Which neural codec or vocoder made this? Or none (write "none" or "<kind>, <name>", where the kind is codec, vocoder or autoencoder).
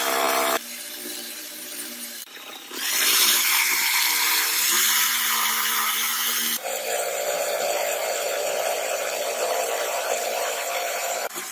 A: vocoder, BigVGAN v2